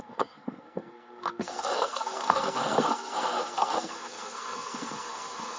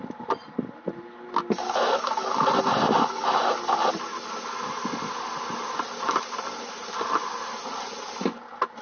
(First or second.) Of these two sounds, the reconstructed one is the first